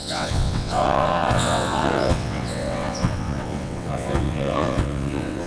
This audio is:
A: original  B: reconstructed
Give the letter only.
B